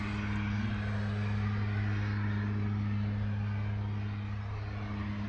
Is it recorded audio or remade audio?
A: recorded